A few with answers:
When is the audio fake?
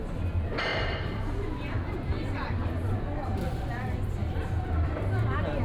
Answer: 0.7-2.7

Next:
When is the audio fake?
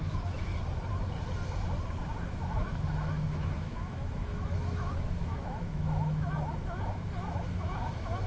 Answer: 0.0-0.5; 2.2-8.3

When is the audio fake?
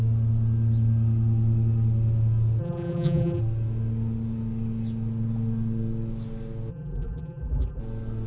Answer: 2.6-3.4; 6.7-7.8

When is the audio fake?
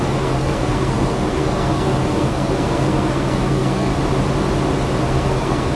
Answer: 0.0-3.9; 5.0-5.7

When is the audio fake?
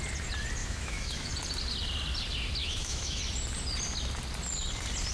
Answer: 0.6-1.3; 2.6-3.2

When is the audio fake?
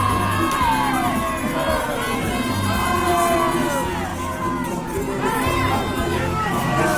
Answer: 6.1-7.0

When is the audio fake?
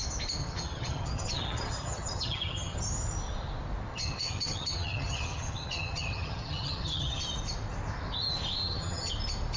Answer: 0.4-2.8; 3.9-7.2; 8.6-9.1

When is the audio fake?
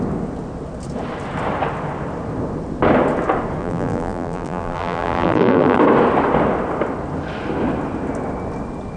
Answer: 3.6-5.8